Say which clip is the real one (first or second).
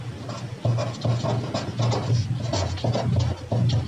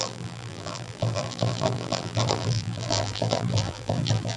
first